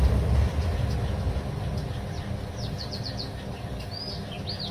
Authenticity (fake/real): real